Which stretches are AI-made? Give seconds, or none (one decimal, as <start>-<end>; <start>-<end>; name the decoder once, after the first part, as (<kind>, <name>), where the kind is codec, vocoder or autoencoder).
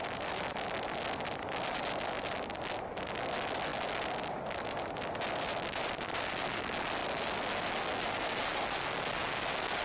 none